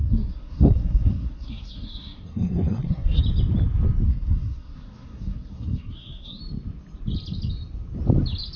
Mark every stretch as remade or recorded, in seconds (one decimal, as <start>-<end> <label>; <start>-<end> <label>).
0.0-3.2 remade; 3.2-4.1 recorded; 4.1-6.4 remade; 6.4-8.6 recorded